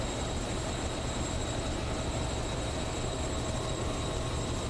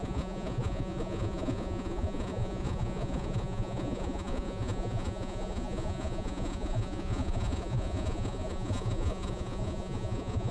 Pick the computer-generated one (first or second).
second